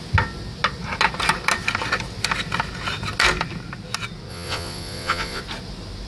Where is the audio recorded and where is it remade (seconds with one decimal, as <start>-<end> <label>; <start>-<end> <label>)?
0.0-4.3 recorded; 4.3-5.4 remade; 5.4-6.1 recorded